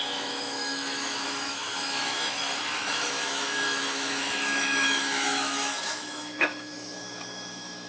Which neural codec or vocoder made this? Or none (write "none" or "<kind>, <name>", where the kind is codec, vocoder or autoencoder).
autoencoder, DAC-VAE